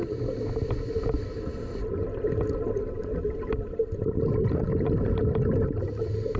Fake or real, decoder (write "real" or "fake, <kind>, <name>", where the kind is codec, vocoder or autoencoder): real